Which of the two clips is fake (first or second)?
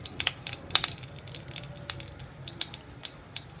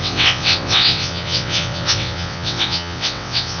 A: second